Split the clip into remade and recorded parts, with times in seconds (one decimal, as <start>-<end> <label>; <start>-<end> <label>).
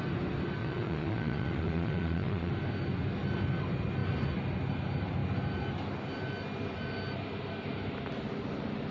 0.0-0.6 recorded; 0.6-2.5 remade; 2.5-8.9 recorded